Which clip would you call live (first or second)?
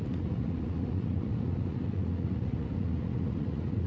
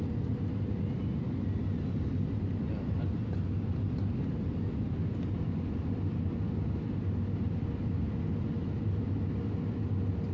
second